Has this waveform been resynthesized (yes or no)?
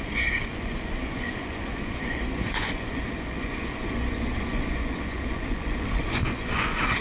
yes